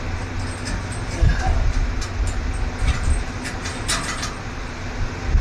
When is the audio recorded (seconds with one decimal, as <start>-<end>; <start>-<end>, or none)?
0.0-5.4